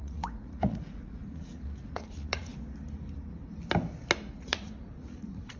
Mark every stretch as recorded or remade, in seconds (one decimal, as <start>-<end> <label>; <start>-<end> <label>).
0.0-2.5 remade; 2.5-4.3 recorded; 4.3-5.6 remade